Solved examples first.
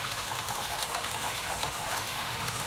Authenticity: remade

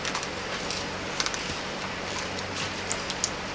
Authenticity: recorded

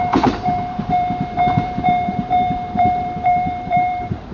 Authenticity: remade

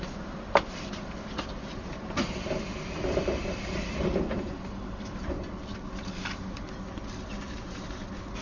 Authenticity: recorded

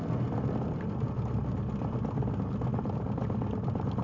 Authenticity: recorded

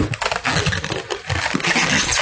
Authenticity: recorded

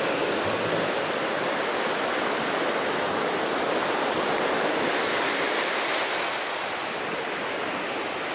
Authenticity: recorded